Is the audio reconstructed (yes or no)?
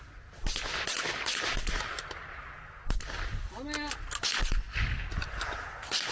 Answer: no